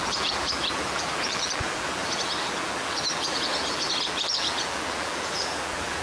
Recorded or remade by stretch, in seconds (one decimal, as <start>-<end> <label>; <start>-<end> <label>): 0.0-6.0 remade